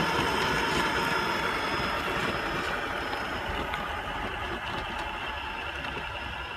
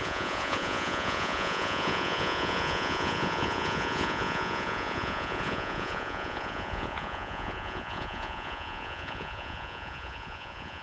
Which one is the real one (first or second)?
first